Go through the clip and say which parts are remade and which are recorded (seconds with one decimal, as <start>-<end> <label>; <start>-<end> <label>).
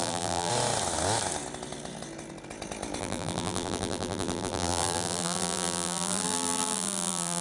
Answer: 0.0-0.5 remade; 0.5-3.0 recorded; 3.0-7.4 remade